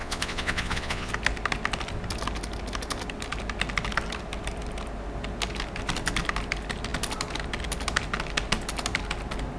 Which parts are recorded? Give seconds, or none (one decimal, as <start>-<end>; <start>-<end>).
1.1-9.6

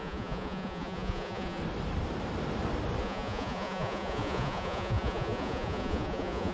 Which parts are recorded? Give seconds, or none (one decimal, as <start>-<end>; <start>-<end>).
1.6-3.0

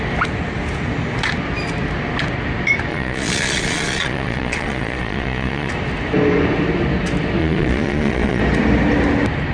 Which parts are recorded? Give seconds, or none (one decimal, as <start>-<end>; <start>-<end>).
0.0-2.9; 5.7-7.4; 8.4-9.5

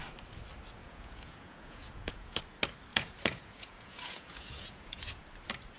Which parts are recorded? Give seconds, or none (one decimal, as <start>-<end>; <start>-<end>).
0.0-0.8; 2.4-2.9; 5.2-5.8